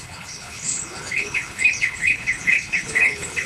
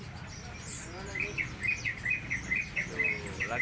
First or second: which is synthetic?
first